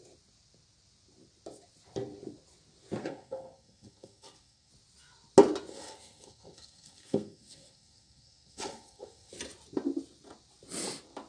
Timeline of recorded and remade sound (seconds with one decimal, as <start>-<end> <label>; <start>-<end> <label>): 0.0-3.0 recorded; 3.0-4.7 remade; 4.7-5.7 recorded; 5.7-9.3 remade; 9.3-11.3 recorded